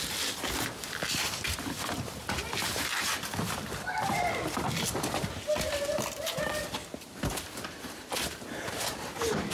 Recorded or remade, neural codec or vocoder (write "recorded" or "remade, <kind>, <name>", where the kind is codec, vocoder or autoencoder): remade, vocoder, BigVGAN v2